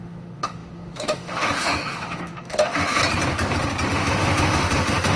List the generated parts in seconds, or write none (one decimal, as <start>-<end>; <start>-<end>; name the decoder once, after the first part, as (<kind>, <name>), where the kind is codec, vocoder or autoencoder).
0.0-3.0 (autoencoder, DAC-VAE); 3.9-5.2